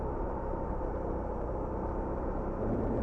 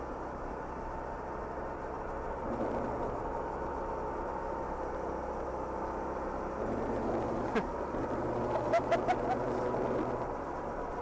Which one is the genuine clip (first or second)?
second